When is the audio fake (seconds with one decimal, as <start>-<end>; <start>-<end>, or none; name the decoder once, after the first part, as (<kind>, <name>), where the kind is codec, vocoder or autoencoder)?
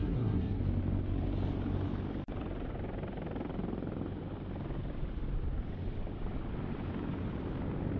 0.0-0.6 (codec, SNAC)